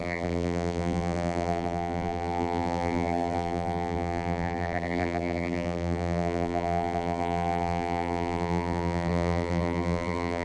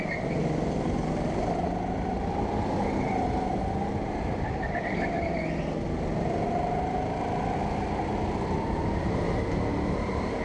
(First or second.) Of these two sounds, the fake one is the first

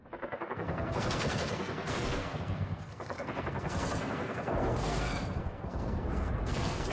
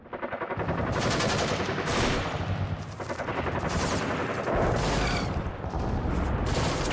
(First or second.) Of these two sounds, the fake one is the first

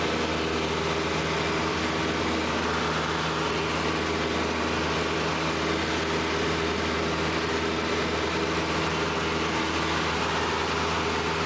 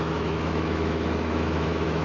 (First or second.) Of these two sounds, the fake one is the second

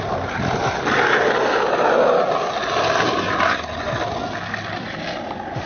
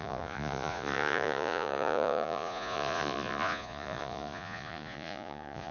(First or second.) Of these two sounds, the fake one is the second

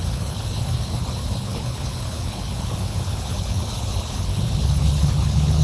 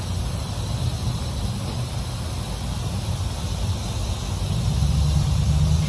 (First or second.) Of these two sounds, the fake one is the first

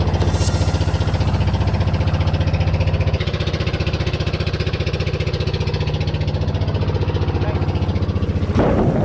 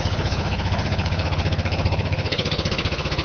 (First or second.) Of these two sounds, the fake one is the second